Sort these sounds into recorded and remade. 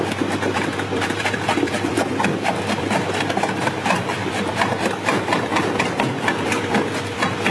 remade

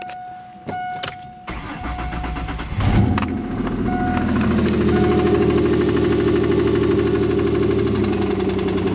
recorded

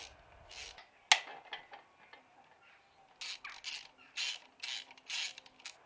recorded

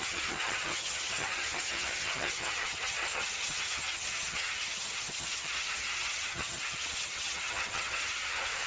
remade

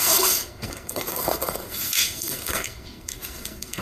remade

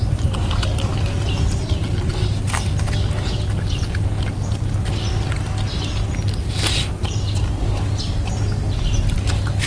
recorded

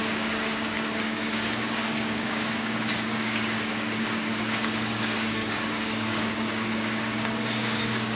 remade